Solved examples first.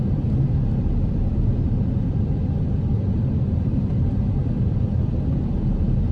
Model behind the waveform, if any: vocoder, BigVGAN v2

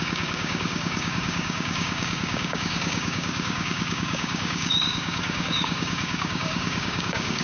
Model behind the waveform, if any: codec, DAC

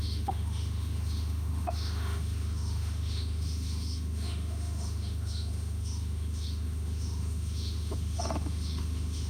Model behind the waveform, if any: autoencoder, DAC-VAE